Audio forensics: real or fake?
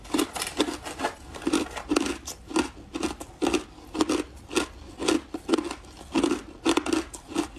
real